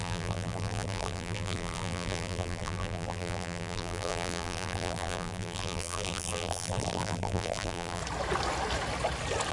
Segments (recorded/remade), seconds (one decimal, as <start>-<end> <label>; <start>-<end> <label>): 0.0-8.0 remade; 8.0-9.5 recorded